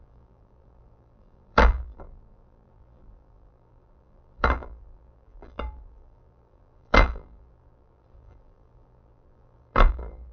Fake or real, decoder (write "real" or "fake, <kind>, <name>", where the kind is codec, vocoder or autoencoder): fake, vocoder, BigVGAN v2